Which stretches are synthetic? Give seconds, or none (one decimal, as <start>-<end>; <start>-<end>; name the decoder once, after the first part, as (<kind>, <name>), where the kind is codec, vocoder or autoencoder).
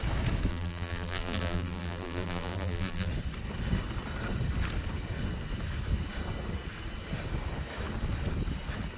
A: 0.5-3.1 (vocoder, BigVGAN v2)